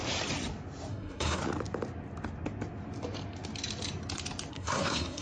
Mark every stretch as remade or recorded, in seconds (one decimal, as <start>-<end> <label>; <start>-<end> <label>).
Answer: 0.0-0.9 recorded; 0.9-1.4 remade; 1.4-4.5 recorded; 4.5-5.2 remade